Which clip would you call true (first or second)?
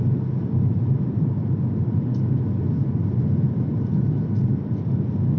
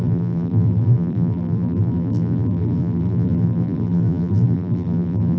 first